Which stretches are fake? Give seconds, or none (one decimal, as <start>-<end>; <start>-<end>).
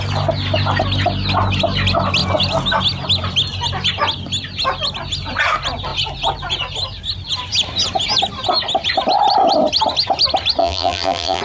10.6-11.4